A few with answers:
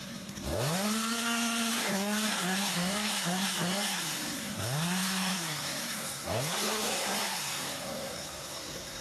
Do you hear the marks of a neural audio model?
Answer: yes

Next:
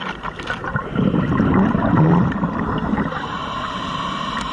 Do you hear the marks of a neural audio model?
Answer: no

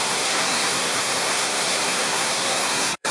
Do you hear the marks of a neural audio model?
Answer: yes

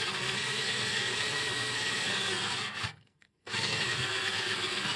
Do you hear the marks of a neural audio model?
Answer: yes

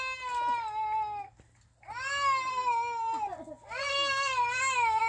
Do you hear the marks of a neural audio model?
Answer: no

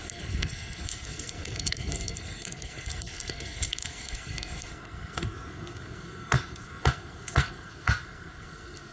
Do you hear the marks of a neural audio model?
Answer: yes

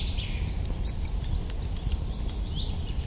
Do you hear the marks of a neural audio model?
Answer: no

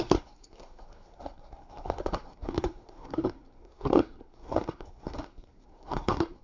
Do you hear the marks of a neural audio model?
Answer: yes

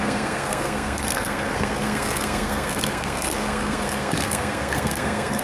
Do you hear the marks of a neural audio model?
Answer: yes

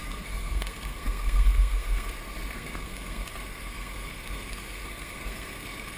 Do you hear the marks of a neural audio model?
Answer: yes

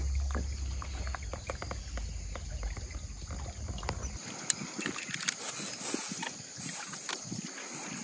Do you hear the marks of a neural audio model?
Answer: no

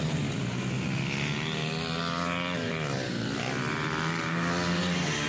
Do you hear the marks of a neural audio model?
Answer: no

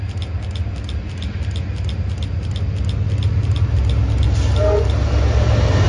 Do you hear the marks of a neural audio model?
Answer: no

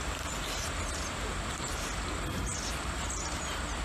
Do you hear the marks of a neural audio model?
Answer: no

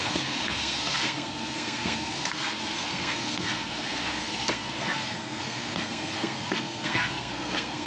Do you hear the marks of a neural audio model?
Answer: yes